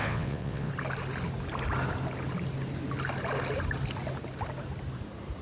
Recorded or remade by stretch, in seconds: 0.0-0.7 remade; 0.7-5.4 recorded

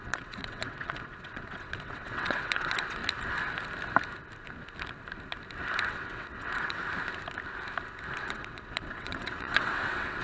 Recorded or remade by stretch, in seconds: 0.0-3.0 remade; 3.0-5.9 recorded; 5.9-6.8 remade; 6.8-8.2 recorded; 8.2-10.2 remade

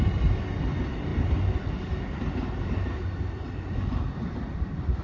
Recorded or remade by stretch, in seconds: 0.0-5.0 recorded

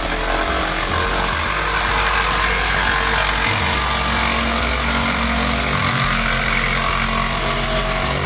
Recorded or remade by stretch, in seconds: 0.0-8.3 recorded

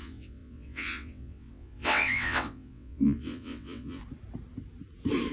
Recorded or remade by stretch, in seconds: 0.0-4.0 remade; 4.0-5.3 recorded

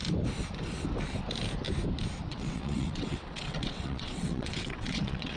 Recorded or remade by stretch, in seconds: 0.0-2.3 recorded; 2.3-5.4 remade

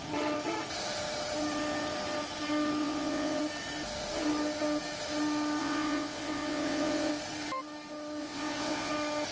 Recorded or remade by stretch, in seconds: 0.0-2.8 recorded; 2.8-3.4 remade; 3.4-5.6 recorded; 5.6-7.1 remade; 7.1-8.2 recorded; 8.2-8.9 remade; 8.9-9.3 recorded